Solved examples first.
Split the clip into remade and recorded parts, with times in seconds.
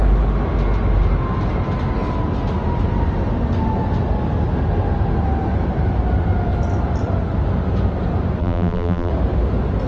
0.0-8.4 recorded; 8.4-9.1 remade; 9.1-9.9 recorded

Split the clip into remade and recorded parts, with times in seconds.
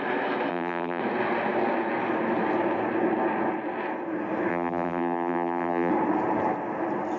0.0-0.5 recorded; 0.5-1.0 remade; 1.0-4.5 recorded; 4.5-5.9 remade; 5.9-7.2 recorded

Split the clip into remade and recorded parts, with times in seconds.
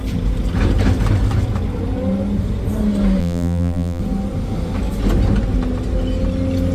0.0-3.2 recorded; 3.2-4.0 remade; 4.0-6.7 recorded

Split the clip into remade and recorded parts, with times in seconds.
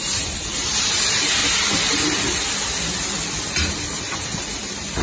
0.0-1.4 remade; 1.4-4.0 recorded; 4.0-5.0 remade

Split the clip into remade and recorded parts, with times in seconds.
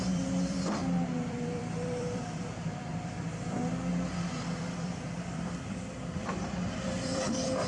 0.0-0.8 remade; 0.8-1.3 recorded; 1.3-2.9 remade; 2.9-3.9 recorded; 3.9-7.7 remade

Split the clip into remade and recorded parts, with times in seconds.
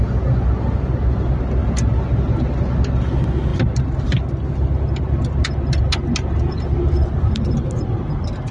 0.0-8.5 recorded